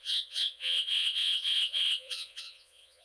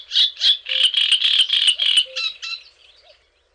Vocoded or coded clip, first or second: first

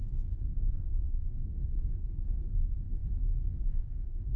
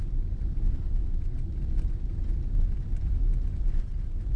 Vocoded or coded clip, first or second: first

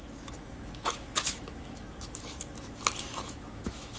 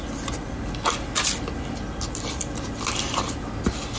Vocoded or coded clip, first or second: first